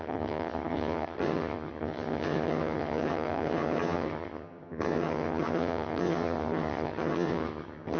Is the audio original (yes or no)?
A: no